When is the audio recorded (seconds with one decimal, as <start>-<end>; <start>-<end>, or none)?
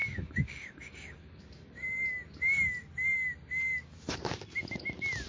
1.4-5.3